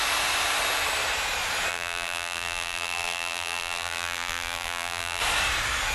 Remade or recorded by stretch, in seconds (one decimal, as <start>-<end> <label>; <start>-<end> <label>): 0.0-1.7 recorded; 1.7-5.2 remade; 5.2-5.9 recorded